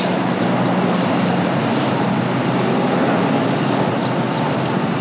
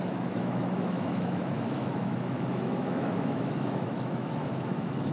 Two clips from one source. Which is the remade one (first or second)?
second